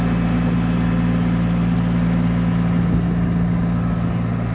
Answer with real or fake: real